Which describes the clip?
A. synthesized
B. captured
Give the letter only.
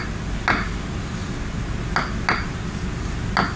B